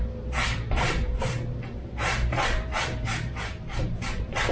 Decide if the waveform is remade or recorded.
remade